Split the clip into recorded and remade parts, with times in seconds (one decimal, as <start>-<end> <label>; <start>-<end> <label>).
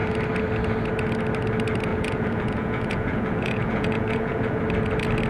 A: 0.0-1.9 recorded; 1.9-4.6 remade; 4.6-5.3 recorded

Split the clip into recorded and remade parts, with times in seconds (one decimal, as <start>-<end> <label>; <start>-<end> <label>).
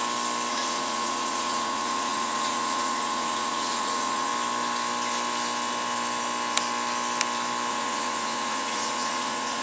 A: 0.0-0.5 recorded; 0.5-4.3 remade; 4.3-7.7 recorded; 7.7-9.6 remade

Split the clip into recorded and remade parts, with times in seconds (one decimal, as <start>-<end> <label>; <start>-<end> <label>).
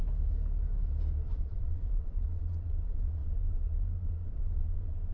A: 0.0-1.3 recorded; 1.3-5.1 remade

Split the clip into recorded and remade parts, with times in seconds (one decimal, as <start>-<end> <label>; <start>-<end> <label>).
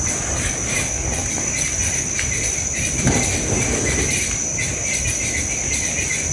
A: 0.0-6.3 recorded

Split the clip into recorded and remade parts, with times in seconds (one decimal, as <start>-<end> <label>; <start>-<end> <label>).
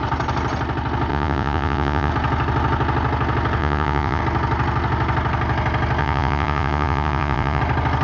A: 0.0-1.1 recorded; 1.1-2.1 remade; 2.1-3.6 recorded; 3.6-4.2 remade; 4.2-6.0 recorded; 6.0-7.6 remade; 7.6-8.0 recorded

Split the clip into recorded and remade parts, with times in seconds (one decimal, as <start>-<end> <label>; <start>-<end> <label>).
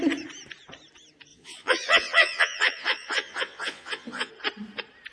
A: 0.0-1.3 recorded; 1.3-4.3 remade; 4.3-5.1 recorded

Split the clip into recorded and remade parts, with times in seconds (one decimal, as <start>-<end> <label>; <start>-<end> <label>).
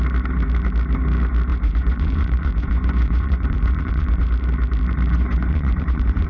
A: 0.0-1.5 recorded; 1.5-4.3 remade; 4.3-5.1 recorded; 5.1-6.3 remade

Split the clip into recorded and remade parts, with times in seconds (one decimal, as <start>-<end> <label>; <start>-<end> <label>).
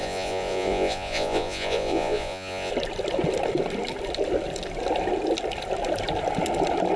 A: 0.0-2.7 remade; 2.7-7.0 recorded